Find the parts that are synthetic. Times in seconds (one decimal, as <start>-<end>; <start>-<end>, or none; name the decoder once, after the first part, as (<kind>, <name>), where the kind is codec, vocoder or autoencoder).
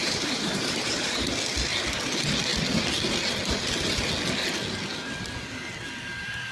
0.0-1.3 (vocoder, BigVGAN v2)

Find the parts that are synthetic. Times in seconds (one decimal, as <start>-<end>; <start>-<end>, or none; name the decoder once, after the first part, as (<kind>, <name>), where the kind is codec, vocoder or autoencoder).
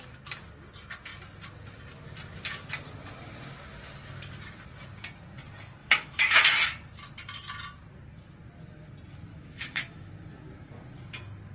5.8-6.4 (autoencoder, DAC-VAE); 9.3-10.1